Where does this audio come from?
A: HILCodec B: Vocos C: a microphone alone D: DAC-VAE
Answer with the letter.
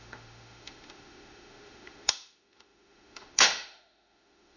D